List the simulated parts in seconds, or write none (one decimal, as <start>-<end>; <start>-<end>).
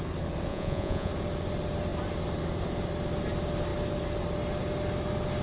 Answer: 0.5-1.1